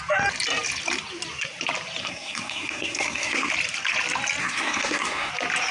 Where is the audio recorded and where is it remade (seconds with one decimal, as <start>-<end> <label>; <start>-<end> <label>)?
0.0-2.0 recorded; 2.0-3.5 remade; 3.5-4.4 recorded; 4.4-5.3 remade; 5.3-5.7 recorded